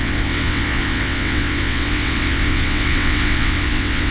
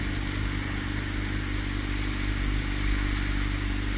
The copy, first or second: first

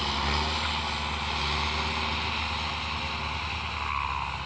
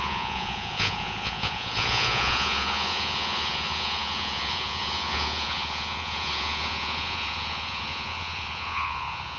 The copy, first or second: second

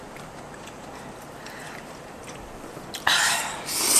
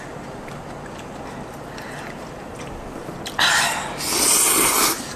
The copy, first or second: first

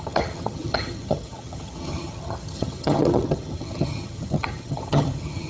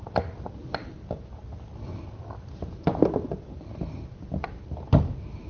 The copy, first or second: first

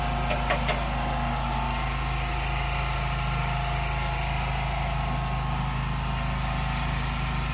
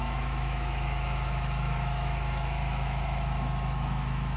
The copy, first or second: second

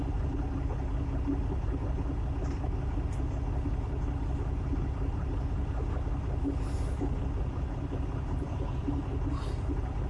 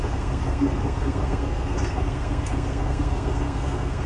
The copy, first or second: second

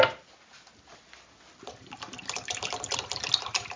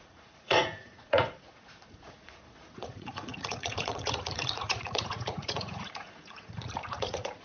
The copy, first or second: second